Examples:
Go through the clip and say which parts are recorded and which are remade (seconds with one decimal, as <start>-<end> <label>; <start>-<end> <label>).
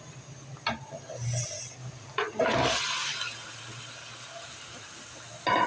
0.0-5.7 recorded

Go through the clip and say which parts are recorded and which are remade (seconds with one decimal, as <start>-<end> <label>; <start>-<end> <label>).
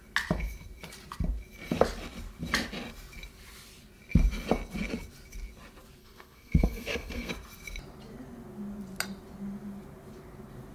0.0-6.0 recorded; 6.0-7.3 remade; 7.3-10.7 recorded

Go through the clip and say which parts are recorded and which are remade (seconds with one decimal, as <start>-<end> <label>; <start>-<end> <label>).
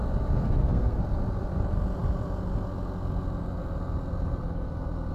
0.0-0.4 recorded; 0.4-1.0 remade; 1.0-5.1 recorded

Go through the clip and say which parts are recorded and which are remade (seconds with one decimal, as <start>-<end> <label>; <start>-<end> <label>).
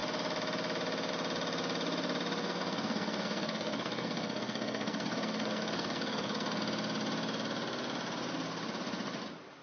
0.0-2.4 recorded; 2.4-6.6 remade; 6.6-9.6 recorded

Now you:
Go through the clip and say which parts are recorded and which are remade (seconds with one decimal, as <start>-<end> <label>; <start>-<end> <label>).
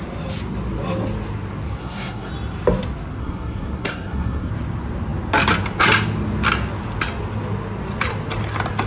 0.0-1.8 recorded; 1.8-2.3 remade; 2.3-3.2 recorded; 3.2-4.5 remade; 4.5-8.9 recorded